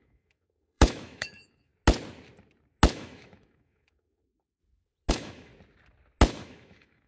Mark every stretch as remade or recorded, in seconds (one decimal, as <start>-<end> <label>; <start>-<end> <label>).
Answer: 0.0-1.7 remade; 1.7-2.9 recorded; 2.9-4.6 remade; 4.6-5.1 recorded; 5.1-5.5 remade; 5.5-6.3 recorded; 6.3-7.1 remade